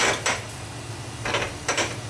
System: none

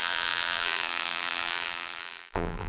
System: vocoder, BigVGAN v2